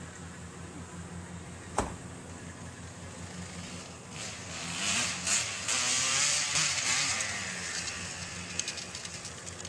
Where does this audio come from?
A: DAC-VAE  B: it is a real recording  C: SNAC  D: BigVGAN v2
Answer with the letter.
B